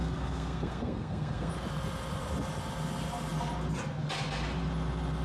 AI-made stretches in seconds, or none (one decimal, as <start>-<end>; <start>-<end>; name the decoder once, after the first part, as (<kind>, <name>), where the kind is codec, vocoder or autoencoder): 0.0-1.5 (codec, SNAC)